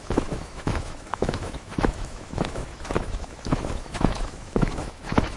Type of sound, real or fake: fake